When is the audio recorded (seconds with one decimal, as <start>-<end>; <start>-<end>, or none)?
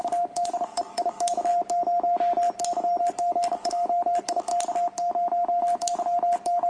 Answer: 1.5-3.0; 4.5-5.6